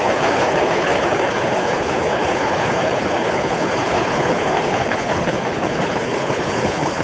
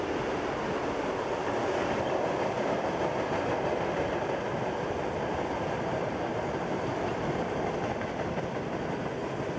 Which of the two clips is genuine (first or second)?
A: second